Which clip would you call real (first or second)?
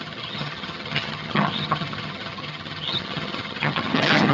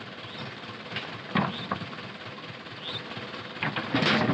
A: second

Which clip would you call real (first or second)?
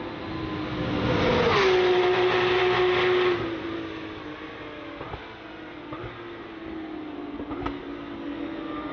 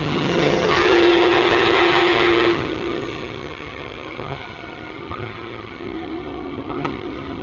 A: first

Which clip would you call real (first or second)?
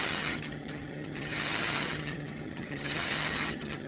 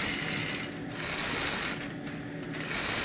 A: second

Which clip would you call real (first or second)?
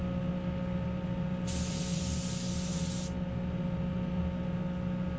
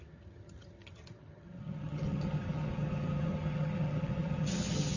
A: first